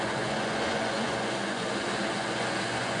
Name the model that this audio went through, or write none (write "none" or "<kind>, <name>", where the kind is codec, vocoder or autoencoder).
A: vocoder, Vocos